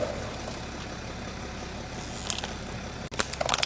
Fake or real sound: real